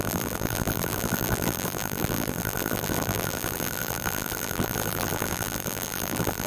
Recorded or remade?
remade